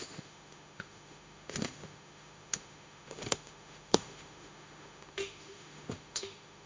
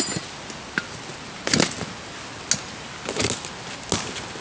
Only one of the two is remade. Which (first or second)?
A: first